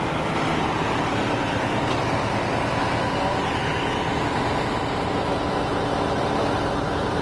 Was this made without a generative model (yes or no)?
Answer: yes